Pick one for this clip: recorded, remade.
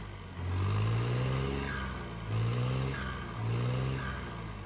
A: recorded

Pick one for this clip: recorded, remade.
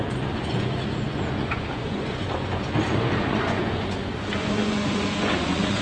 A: remade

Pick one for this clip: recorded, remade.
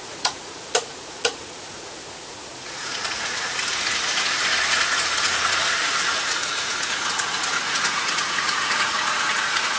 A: remade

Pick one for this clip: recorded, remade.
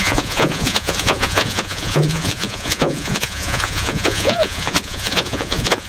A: remade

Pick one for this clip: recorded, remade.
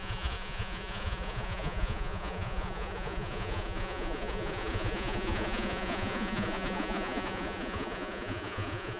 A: remade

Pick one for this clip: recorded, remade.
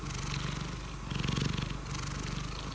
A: recorded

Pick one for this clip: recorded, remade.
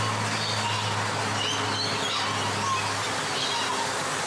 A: recorded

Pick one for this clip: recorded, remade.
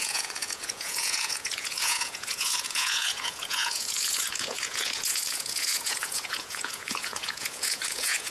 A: remade